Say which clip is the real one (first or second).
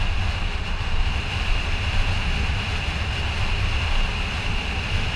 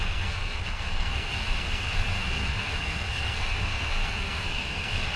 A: first